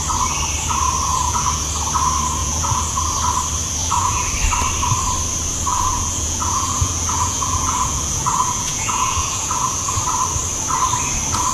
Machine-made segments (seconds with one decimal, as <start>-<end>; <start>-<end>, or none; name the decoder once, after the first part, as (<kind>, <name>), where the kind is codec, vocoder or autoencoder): 1.1-1.6 (vocoder, Vocos); 2.4-3.0; 3.8-4.3; 5.7-10.0

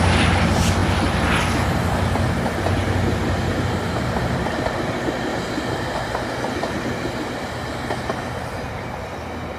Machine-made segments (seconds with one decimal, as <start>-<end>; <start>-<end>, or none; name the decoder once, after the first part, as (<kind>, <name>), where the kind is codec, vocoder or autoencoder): none